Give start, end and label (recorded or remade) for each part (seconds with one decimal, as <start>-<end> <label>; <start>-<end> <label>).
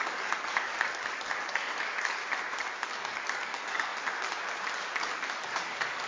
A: 0.0-2.2 remade; 2.2-2.9 recorded; 2.9-3.9 remade; 3.9-5.0 recorded; 5.0-6.1 remade